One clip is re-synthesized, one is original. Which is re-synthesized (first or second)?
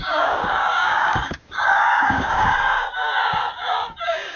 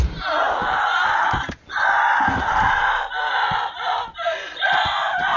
first